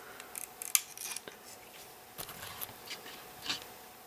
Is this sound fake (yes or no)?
no